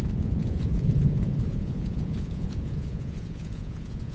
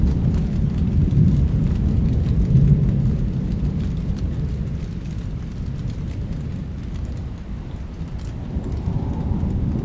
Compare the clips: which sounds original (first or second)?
second